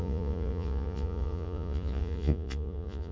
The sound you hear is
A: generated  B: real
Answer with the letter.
A